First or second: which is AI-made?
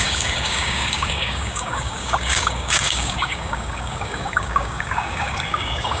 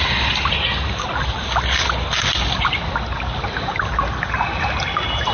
first